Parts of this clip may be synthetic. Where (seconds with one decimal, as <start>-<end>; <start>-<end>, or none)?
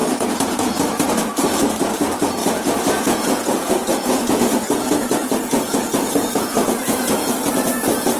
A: 0.0-1.1; 2.4-7.3